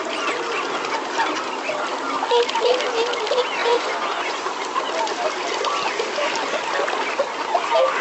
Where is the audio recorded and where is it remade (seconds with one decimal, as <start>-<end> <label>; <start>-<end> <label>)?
0.0-3.6 recorded; 3.6-4.5 remade; 4.5-8.0 recorded